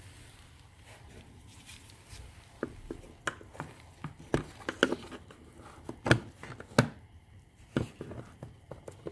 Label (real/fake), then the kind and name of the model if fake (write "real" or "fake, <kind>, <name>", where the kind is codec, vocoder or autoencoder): real